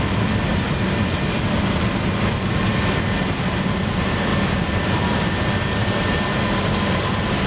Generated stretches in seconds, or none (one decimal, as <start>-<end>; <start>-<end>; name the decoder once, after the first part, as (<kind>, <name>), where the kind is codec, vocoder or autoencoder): none